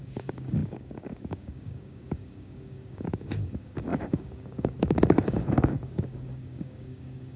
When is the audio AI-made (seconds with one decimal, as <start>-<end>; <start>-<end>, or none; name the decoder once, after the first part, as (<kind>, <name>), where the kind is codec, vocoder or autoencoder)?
0.0-7.4 (codec, DAC)